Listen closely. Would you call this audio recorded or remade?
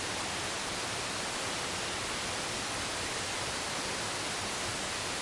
recorded